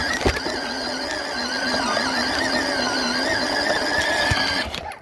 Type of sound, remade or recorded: recorded